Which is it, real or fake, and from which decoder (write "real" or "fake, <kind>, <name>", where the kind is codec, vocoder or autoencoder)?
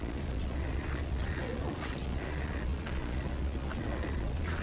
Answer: fake, vocoder, Vocos